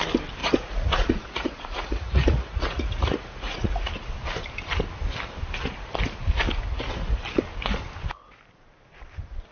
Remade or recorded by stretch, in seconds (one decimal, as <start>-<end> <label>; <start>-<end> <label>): 0.0-0.4 recorded; 0.4-3.9 remade; 3.9-9.5 recorded